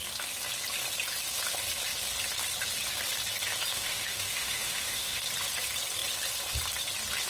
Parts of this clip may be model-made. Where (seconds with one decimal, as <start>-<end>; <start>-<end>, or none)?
3.7-5.2